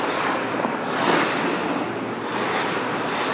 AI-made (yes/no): no